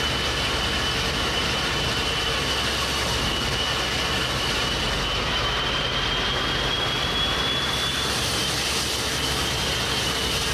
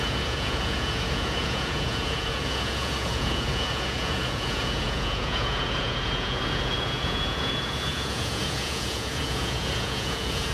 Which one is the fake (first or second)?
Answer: second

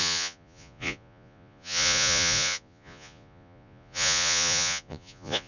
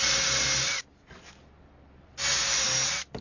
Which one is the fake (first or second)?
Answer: first